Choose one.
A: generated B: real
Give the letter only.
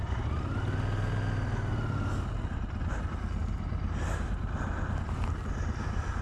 B